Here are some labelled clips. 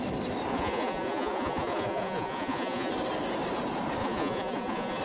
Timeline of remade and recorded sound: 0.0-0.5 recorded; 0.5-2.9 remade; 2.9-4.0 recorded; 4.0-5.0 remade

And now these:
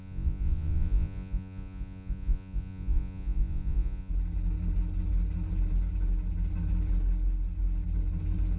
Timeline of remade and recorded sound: 0.0-4.1 remade; 4.1-8.6 recorded

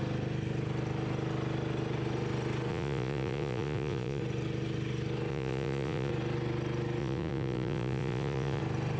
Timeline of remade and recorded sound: 0.0-2.7 recorded; 2.7-4.2 remade; 4.2-5.3 recorded; 5.3-6.1 remade; 6.1-7.0 recorded; 7.0-8.6 remade; 8.6-9.0 recorded

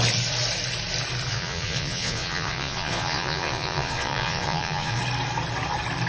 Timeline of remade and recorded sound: 0.0-1.3 recorded; 1.3-5.0 remade; 5.0-6.1 recorded

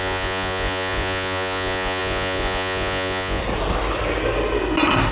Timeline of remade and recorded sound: 0.0-3.4 remade; 3.4-5.1 recorded

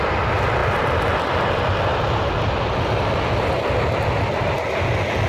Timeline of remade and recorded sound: 0.0-5.3 recorded

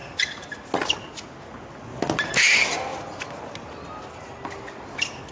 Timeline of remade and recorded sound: 0.0-5.3 recorded

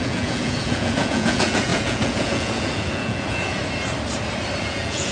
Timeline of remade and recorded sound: 0.0-3.6 remade; 3.6-4.6 recorded; 4.6-5.1 remade